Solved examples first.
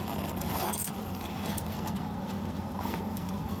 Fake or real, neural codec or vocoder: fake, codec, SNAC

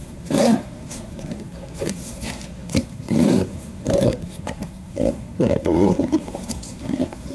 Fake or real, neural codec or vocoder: fake, codec, SNAC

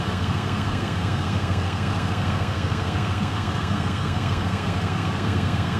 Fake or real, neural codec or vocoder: fake, codec, SNAC